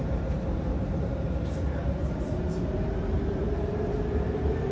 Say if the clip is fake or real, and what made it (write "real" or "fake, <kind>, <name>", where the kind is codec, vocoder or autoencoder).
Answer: fake, vocoder, BigVGAN v2